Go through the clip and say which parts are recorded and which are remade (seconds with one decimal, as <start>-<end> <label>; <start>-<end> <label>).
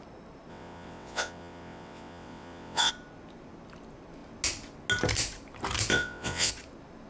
0.0-0.5 recorded; 0.5-2.9 remade; 2.9-5.9 recorded; 5.9-6.5 remade; 6.5-7.1 recorded